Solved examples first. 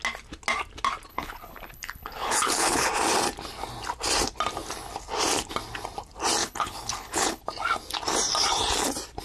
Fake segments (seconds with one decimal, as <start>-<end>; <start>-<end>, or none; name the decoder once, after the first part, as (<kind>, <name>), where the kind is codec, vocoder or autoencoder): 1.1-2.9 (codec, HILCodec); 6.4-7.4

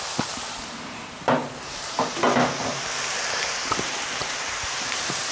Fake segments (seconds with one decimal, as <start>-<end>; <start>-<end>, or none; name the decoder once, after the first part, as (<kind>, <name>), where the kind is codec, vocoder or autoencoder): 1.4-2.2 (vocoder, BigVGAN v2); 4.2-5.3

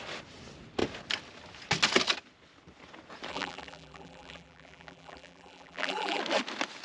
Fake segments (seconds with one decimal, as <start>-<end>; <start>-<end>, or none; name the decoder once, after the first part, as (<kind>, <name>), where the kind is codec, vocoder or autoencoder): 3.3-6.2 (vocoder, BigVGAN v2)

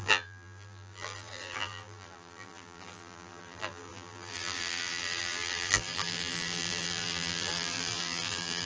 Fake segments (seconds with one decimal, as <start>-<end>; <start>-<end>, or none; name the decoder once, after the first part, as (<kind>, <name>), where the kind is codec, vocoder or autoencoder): 0.0-8.7 (vocoder, BigVGAN v2)

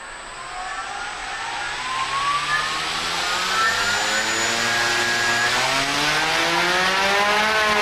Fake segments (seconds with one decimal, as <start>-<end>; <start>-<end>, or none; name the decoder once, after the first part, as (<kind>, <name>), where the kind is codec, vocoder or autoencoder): none

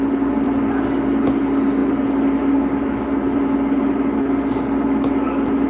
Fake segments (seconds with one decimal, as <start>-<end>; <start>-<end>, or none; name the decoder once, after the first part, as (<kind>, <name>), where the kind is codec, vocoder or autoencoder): none

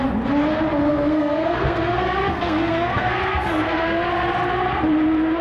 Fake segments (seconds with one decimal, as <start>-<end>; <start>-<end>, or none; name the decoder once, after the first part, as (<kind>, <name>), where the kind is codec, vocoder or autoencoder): 0.9-4.1 (codec, SNAC)

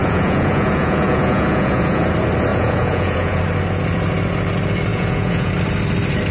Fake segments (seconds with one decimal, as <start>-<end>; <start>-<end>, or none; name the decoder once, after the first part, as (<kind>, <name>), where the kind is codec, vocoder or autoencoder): 0.0-2.1 (vocoder, Vocos); 2.5-3.4; 4.9-5.5